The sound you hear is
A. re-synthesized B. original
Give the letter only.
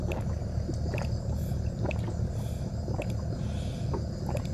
B